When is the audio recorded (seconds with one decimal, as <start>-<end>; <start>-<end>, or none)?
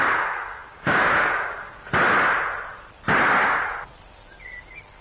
1.9-5.0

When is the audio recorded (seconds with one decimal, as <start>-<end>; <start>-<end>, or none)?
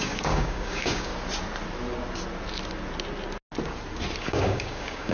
1.1-4.2